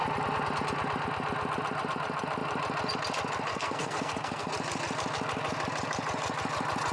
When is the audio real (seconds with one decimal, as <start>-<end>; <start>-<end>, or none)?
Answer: 0.0-3.5; 4.5-6.9

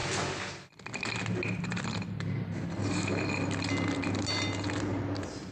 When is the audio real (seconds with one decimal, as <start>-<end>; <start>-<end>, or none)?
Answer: 0.0-5.5

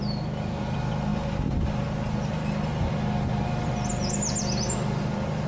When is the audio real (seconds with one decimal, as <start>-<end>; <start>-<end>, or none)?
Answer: 0.0-5.5

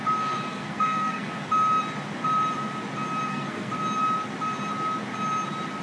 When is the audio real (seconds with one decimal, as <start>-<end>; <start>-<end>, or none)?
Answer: 0.0-0.5; 1.3-3.3; 3.8-5.8